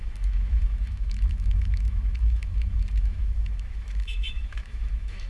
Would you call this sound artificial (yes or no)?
yes